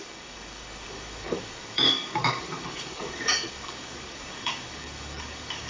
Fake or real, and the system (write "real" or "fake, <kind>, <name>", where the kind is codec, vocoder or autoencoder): fake, codec, DAC